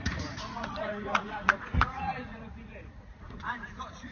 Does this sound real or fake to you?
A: fake